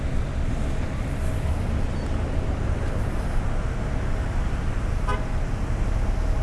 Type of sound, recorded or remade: recorded